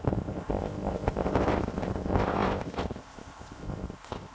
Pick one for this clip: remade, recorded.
remade